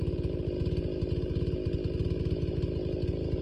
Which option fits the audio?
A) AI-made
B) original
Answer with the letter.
B